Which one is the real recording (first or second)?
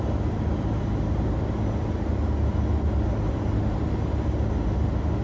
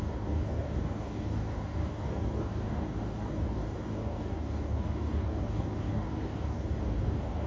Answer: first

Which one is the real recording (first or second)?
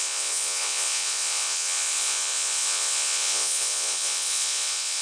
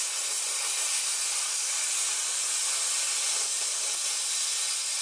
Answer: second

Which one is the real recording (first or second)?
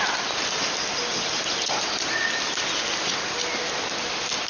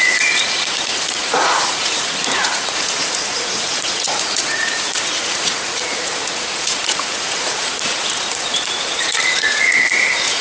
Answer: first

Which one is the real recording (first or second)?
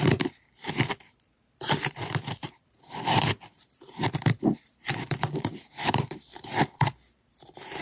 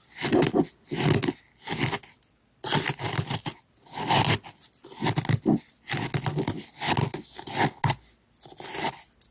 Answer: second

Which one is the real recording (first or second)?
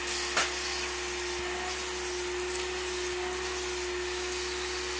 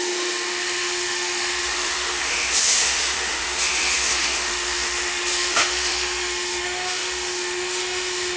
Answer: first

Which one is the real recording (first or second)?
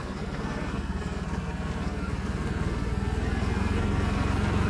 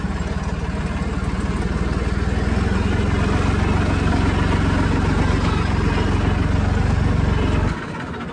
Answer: second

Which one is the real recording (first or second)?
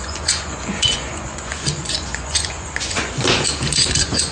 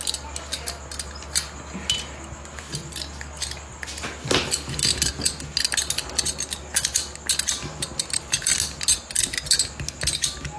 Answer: second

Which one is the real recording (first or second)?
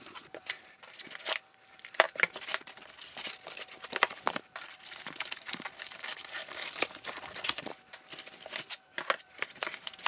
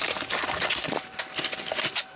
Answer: second